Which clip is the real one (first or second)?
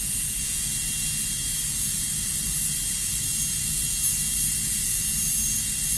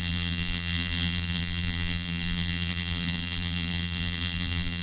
first